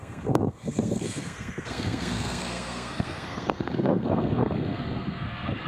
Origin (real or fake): fake